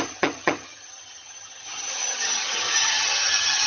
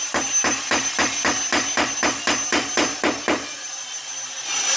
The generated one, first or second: first